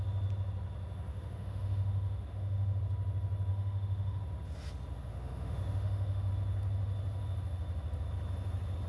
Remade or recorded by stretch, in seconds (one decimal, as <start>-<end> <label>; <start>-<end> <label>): 0.0-1.1 recorded; 1.1-2.8 remade; 2.8-3.5 recorded; 3.5-4.2 remade; 4.2-5.1 recorded; 5.1-6.3 remade; 6.3-8.9 recorded